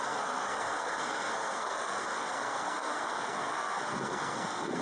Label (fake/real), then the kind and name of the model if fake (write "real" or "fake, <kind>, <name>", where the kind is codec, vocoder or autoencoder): fake, codec, SNAC